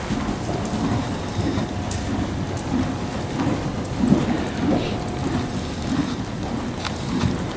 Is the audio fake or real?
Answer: real